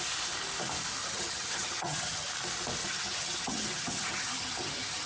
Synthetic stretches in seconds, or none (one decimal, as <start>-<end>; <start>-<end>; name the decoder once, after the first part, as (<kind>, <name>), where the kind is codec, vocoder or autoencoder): 1.0-2.3 (vocoder, HiFi-GAN); 2.8-5.1